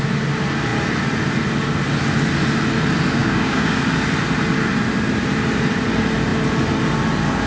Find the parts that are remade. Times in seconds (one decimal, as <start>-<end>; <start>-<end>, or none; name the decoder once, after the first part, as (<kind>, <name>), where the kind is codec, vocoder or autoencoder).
3.2-3.8 (codec, DAC)